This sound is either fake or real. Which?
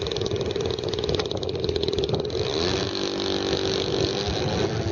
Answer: real